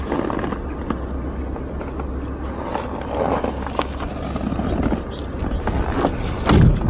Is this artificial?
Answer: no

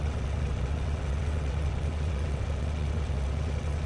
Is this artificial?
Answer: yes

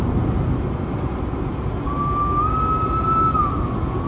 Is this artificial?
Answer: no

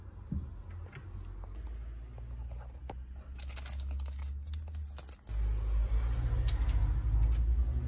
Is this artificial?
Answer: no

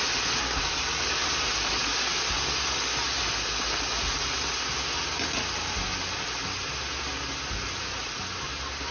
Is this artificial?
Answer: no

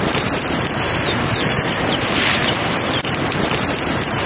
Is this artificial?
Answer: yes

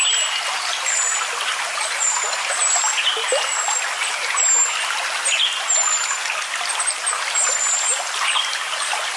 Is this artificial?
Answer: no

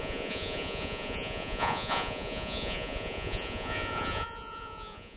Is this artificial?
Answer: yes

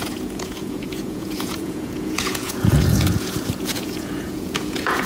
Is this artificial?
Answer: yes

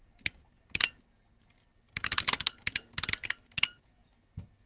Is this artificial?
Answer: no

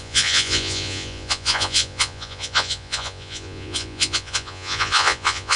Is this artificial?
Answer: yes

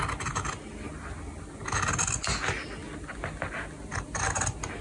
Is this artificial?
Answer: no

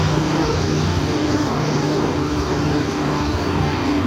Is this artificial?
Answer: yes